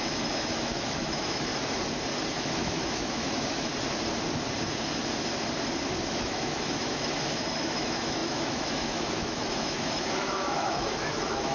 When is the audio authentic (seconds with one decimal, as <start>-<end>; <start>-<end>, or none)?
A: 1.5-2.3; 3.7-6.1